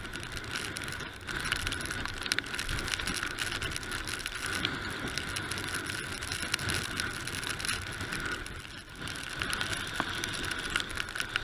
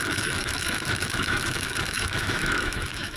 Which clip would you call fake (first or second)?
second